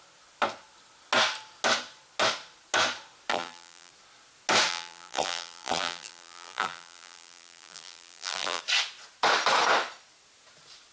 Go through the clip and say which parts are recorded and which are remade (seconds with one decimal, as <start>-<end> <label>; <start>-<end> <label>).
0.0-3.3 recorded; 3.3-3.9 remade; 3.9-4.7 recorded; 4.7-8.6 remade; 8.6-10.9 recorded